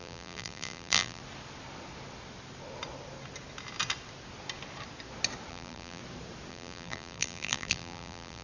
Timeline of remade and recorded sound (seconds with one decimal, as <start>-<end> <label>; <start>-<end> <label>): 0.0-1.2 remade; 1.2-5.5 recorded; 5.5-6.0 remade; 6.0-6.5 recorded; 6.5-8.4 remade